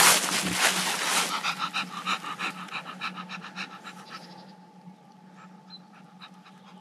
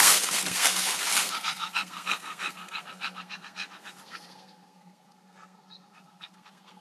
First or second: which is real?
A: first